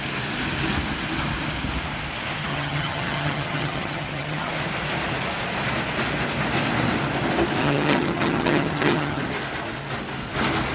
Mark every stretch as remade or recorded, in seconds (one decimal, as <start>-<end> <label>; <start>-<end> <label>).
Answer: 0.0-2.5 recorded; 2.5-4.5 remade; 4.5-7.6 recorded; 7.6-9.2 remade; 9.2-10.7 recorded